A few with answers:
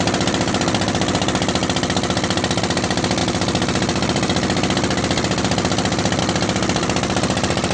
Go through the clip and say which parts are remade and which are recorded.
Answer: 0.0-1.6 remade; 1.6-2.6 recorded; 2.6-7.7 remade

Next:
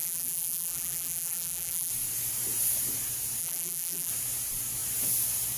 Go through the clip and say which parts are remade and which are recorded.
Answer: 0.0-1.9 remade; 1.9-3.4 recorded; 3.4-4.1 remade; 4.1-5.6 recorded